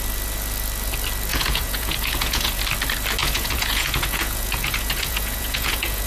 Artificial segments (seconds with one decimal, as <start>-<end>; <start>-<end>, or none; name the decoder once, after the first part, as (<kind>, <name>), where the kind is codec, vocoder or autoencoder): 1.3-2.6 (vocoder, Vocos); 3.2-6.1